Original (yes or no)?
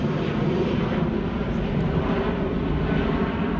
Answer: yes